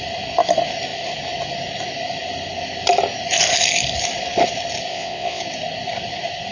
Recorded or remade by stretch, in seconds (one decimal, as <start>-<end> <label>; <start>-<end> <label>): 0.0-4.9 recorded; 4.9-5.4 remade; 5.4-6.5 recorded